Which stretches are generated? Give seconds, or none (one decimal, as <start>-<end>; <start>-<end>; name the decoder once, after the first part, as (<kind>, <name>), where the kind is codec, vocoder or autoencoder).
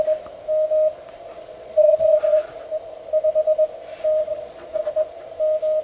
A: 1.3-2.6 (vocoder, Vocos); 4.2-4.9